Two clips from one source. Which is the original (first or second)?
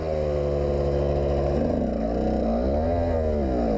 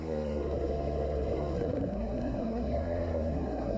first